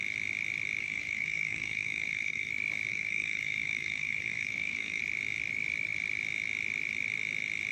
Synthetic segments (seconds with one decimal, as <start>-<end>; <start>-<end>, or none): 0.8-2.5; 2.9-5.0